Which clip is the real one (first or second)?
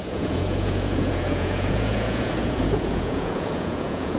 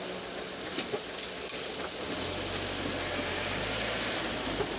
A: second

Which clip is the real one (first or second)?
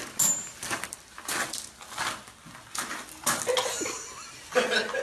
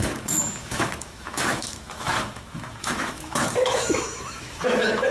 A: first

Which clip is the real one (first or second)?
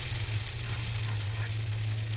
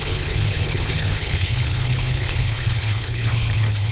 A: first